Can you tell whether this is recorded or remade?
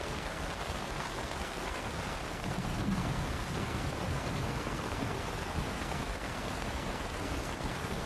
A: remade